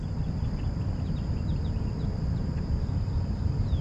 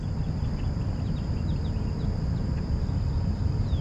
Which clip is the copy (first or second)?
first